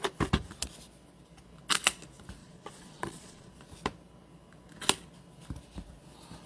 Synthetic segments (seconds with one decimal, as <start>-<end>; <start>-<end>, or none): 2.4-3.5